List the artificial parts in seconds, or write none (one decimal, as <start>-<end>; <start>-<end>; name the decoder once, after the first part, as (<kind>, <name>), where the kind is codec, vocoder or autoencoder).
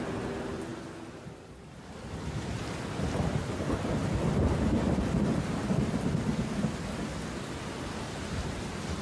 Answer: none